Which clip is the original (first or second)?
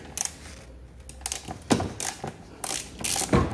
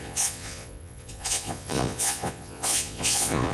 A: first